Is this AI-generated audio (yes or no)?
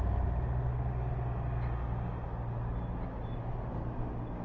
no